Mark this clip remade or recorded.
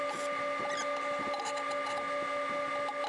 recorded